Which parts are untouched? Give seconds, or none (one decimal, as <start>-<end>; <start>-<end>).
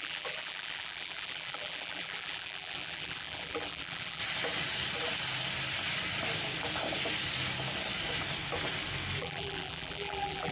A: 4.2-9.2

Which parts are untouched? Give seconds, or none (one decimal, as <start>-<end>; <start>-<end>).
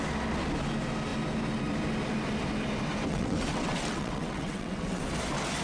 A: 0.0-3.1; 5.0-5.6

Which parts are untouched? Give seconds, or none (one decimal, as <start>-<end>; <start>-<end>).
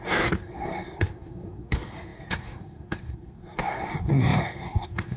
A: none